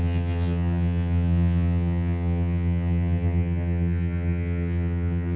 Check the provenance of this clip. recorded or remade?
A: remade